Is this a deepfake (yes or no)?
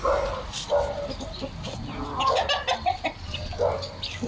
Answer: no